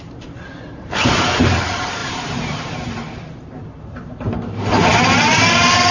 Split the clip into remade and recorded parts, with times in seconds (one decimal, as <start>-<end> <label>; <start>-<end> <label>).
0.0-5.9 remade